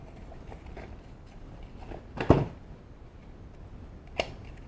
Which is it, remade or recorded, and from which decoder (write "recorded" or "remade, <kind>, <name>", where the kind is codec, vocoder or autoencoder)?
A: recorded